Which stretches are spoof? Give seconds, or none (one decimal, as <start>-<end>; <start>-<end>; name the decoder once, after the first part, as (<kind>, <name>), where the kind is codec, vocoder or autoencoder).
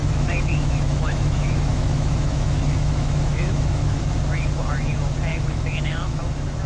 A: 0.0-4.0 (autoencoder, DAC-VAE); 5.3-6.2